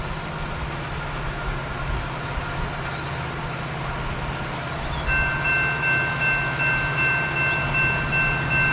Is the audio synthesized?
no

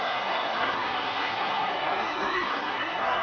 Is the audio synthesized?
yes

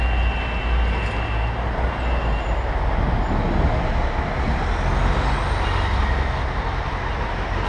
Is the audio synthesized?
no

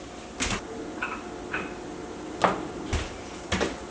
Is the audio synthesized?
no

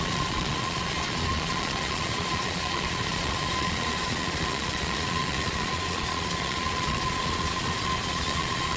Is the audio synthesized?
yes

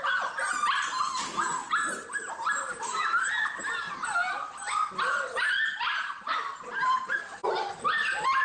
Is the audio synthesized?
no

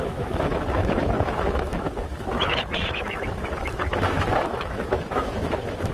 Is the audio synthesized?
yes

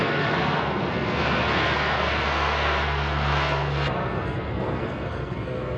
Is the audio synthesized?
yes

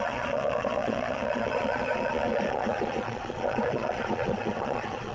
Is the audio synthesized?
yes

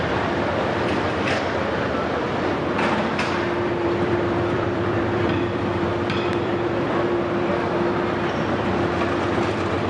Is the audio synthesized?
yes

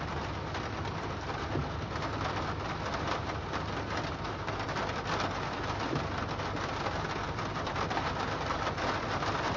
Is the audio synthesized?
no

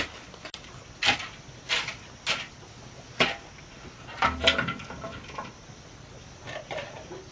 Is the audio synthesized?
no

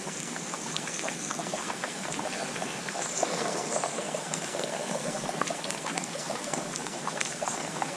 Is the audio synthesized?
yes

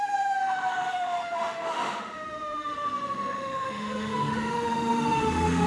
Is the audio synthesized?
yes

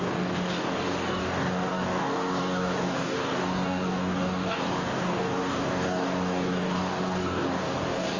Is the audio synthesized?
yes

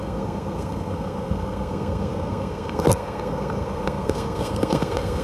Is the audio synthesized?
yes